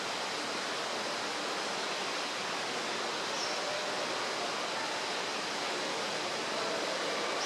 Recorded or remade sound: recorded